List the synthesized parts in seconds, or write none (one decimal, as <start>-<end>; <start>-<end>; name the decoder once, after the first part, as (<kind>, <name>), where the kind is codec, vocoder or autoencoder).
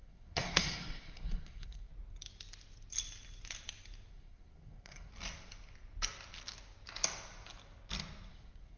0.0-1.9 (codec, SNAC); 4.1-5.1; 8.3-8.8